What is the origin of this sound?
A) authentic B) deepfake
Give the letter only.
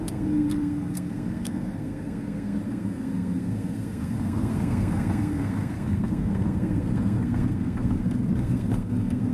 B